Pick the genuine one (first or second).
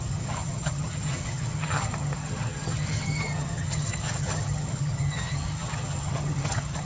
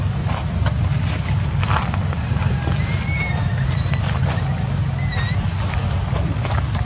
second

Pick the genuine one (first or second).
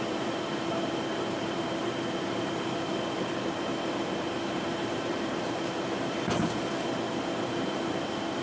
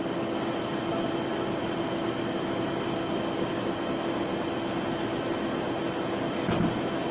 second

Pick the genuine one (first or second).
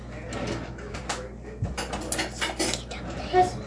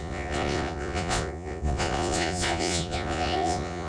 first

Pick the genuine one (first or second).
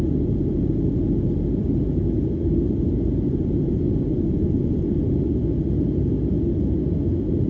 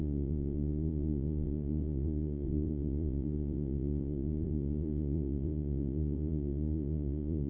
first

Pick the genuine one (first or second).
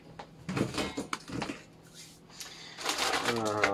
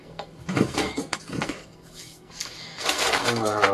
first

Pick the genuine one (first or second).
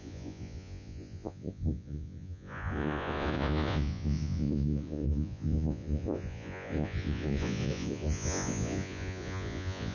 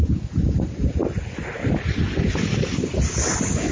second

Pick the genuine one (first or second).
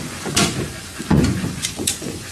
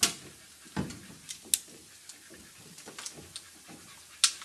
second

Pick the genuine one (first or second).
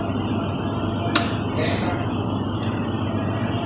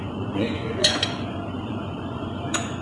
first